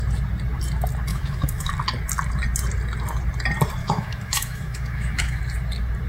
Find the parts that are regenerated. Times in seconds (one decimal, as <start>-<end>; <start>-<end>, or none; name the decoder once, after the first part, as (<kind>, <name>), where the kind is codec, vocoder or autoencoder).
1.1-1.7 (autoencoder, DAC-VAE); 3.8-5.4